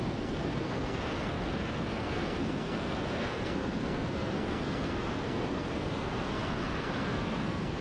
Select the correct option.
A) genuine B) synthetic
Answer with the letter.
B